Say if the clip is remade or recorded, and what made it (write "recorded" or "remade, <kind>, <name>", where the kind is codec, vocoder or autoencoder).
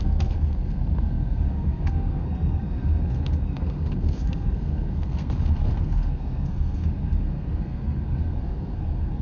remade, codec, SNAC